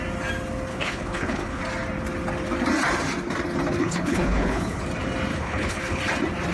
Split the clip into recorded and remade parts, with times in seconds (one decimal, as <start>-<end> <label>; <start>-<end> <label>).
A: 0.0-0.7 recorded; 0.7-1.6 remade; 1.6-3.8 recorded; 3.8-4.8 remade; 4.8-5.3 recorded; 5.3-6.0 remade; 6.0-6.5 recorded